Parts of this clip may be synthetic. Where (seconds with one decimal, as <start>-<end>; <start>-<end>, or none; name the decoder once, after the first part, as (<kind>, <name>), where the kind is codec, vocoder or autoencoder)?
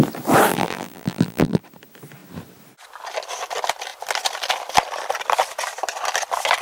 0.5-1.6 (vocoder, BigVGAN v2)